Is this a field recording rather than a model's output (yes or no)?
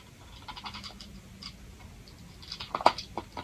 yes